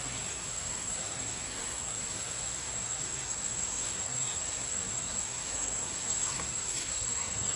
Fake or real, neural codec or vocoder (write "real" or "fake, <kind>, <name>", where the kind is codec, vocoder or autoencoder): fake, codec, SNAC